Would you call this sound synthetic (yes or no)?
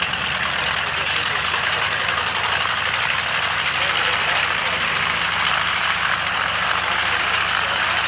no